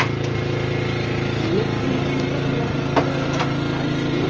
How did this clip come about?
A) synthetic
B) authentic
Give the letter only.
B